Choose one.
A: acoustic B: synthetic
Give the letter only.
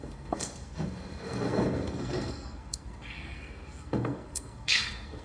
B